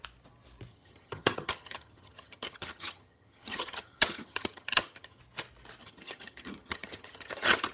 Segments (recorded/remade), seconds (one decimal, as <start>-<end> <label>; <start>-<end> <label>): 0.0-0.7 recorded; 0.7-5.2 remade; 5.2-5.8 recorded; 5.8-7.7 remade